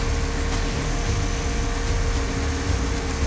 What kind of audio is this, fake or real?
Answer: real